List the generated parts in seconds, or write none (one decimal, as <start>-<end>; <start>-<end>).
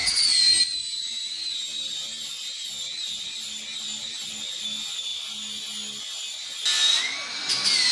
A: none